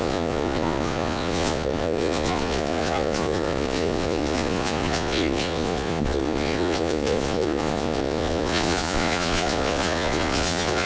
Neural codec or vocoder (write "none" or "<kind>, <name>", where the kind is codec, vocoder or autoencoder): vocoder, Vocos